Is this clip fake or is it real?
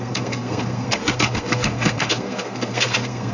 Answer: fake